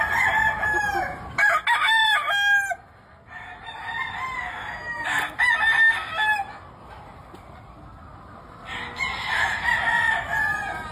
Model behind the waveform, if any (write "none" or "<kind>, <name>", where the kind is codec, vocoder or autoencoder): none